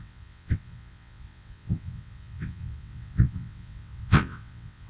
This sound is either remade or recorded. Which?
remade